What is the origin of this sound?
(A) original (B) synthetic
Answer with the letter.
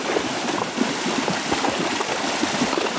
A